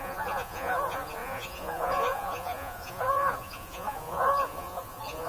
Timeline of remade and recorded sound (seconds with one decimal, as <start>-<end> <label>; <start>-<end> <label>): 0.0-5.3 remade